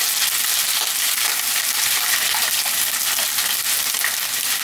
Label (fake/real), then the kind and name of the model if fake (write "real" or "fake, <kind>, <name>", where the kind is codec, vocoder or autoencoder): real